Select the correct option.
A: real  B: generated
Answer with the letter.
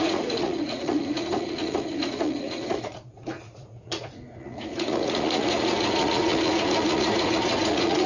B